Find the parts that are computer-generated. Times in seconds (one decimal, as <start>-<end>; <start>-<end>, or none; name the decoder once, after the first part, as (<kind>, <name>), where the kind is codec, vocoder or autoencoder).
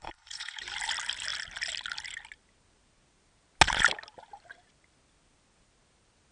0.0-0.6 (codec, HILCodec)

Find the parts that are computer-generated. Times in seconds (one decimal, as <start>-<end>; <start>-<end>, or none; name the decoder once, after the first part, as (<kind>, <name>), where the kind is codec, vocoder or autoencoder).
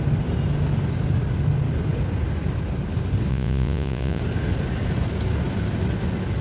3.3-4.2 (vocoder, Vocos)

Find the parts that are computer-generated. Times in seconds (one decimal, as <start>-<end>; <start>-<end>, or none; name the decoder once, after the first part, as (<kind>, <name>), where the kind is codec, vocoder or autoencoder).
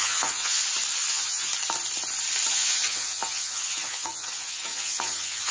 0.0-0.6 (vocoder, Vocos); 1.1-1.5; 2.5-5.5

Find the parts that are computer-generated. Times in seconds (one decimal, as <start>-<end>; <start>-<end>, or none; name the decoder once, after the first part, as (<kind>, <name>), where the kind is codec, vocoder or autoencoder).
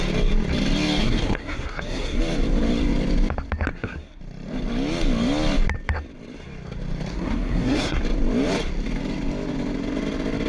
1.0-2.2 (codec, SNAC); 3.7-4.2; 7.1-8.0